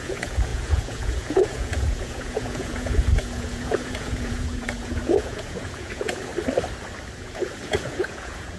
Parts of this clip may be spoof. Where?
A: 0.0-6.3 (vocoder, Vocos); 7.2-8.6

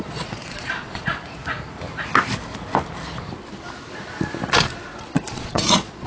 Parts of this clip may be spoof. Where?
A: 0.0-1.4 (vocoder, Vocos); 5.1-6.1

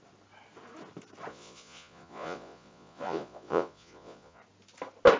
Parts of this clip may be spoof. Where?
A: 1.3-4.4 (vocoder, Vocos)

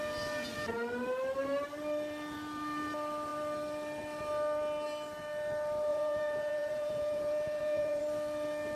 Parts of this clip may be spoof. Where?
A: 5.9-8.0 (vocoder, Vocos)

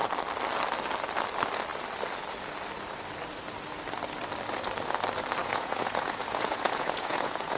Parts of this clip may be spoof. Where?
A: 5.4-7.6 (vocoder, Vocos)